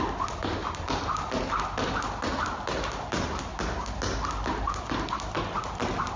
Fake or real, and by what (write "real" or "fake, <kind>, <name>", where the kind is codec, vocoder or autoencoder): real